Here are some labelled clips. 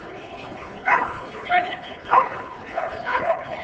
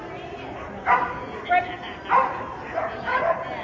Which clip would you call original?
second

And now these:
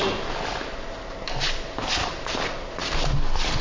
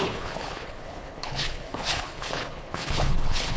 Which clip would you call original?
first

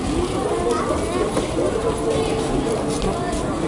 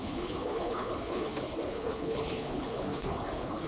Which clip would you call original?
first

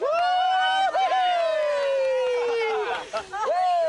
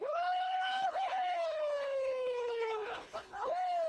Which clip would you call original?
first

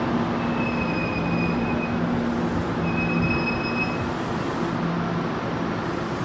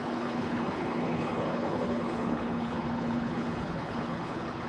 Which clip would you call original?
first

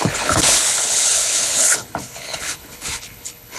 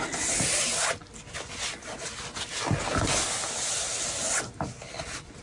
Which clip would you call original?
second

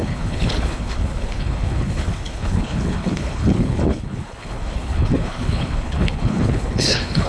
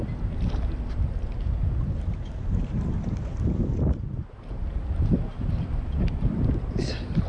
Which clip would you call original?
second